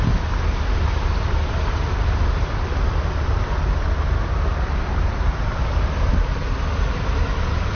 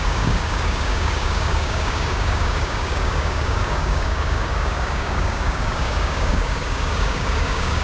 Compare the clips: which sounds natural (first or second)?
first